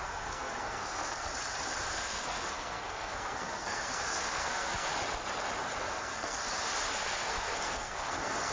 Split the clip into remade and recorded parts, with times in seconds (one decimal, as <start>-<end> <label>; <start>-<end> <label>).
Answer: 0.0-1.3 remade; 1.3-1.9 recorded; 1.9-4.9 remade; 4.9-5.8 recorded; 5.8-6.4 remade; 6.4-6.9 recorded; 6.9-8.5 remade